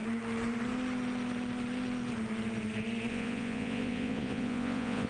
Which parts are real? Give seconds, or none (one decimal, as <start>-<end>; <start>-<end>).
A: 0.0-3.1